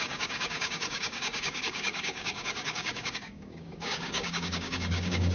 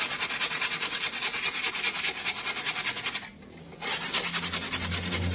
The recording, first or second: second